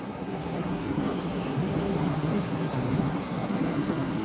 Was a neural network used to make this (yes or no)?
yes